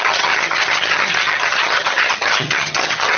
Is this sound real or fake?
fake